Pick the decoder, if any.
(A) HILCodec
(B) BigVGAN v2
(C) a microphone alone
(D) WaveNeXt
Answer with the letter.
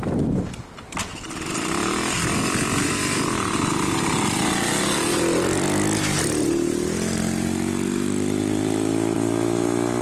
C